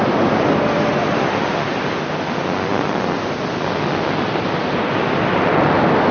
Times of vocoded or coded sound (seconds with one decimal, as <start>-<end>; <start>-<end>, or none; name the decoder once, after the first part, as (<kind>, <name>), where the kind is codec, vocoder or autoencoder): none